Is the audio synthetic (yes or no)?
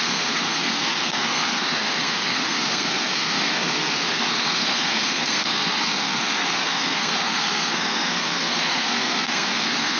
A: yes